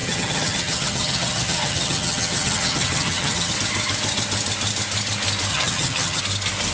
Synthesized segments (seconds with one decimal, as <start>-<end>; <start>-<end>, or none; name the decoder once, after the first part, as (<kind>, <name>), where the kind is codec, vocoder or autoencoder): 0.0-3.5 (vocoder, HiFi-GAN); 5.5-6.2